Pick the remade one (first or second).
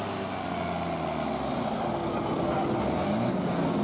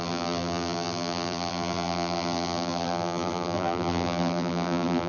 second